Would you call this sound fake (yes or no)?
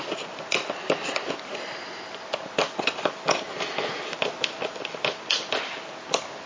no